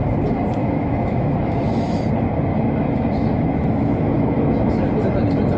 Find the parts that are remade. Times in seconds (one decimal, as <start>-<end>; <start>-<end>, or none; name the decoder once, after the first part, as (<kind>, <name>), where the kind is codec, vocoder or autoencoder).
0.6-2.1 (autoencoder, DAC-VAE); 2.5-4.7